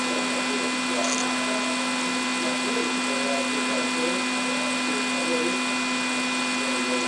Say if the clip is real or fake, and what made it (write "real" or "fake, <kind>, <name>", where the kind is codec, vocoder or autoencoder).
real